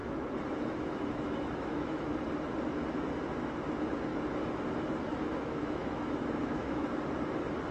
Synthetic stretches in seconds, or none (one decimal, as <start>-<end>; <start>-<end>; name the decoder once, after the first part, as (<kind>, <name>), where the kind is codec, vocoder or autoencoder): 0.0-2.1 (autoencoder, DAC-VAE); 5.1-6.9